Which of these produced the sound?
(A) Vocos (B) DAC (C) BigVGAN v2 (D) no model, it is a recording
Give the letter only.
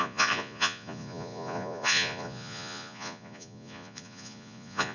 A